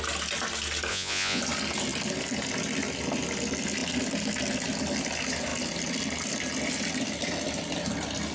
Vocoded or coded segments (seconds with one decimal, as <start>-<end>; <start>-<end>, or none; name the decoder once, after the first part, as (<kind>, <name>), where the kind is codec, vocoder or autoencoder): 0.9-1.4 (vocoder, Vocos)